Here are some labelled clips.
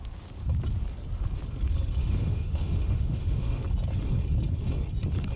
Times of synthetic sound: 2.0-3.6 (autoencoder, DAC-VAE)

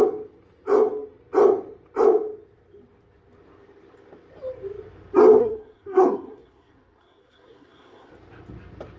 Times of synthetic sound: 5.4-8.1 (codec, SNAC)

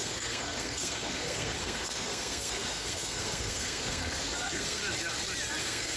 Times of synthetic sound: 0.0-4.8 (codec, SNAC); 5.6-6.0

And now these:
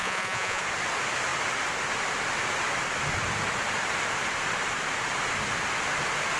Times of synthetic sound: 0.0-0.6 (vocoder, Vocos)

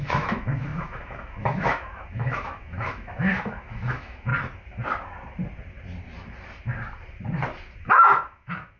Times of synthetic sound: 0.0-4.3 (autoencoder, DAC-VAE); 7.8-8.8

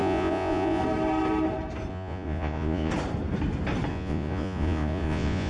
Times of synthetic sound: 0.0-0.8 (vocoder, Vocos); 1.9-2.9; 3.9-5.5